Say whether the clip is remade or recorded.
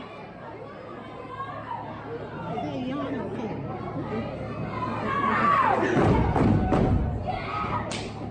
recorded